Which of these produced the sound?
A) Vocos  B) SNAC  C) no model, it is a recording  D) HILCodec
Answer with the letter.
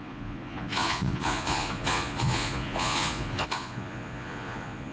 A